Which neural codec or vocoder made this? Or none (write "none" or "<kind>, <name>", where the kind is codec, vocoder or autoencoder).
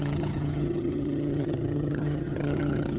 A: vocoder, HiFi-GAN